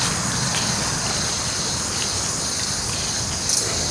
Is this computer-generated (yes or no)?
no